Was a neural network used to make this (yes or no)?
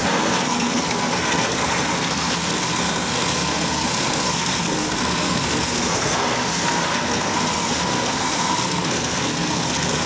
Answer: yes